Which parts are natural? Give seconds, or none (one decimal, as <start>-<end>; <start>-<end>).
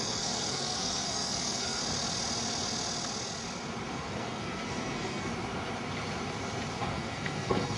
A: 1.8-3.9; 5.3-6.8